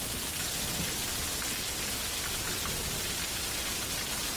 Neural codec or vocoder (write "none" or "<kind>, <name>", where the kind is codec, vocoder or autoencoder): none